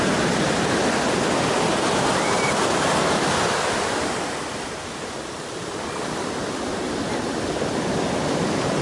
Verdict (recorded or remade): remade